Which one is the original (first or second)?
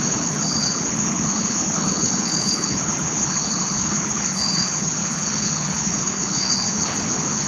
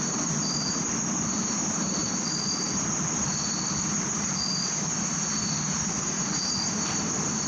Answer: second